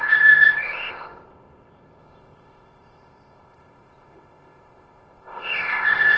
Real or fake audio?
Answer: fake